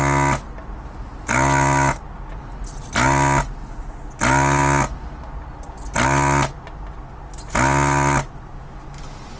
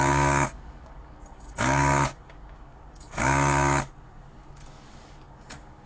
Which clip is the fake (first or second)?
second